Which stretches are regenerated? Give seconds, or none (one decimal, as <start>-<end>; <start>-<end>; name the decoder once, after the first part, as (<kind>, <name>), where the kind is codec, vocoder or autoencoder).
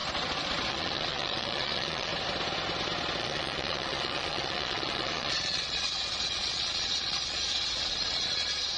0.7-2.1 (vocoder, Vocos); 3.2-8.8